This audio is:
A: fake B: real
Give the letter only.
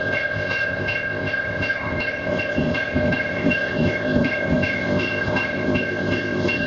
A